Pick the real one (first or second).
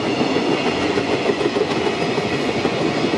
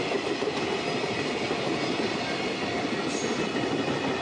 second